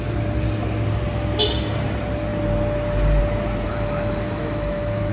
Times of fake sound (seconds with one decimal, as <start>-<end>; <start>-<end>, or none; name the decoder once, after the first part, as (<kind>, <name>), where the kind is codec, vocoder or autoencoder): 3.7-5.1 (autoencoder, DAC-VAE)